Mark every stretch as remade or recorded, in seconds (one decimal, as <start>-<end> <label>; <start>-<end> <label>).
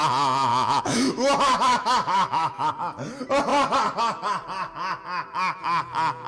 0.0-0.5 recorded; 0.5-2.7 remade; 2.7-6.3 recorded